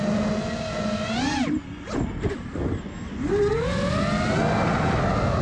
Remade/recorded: recorded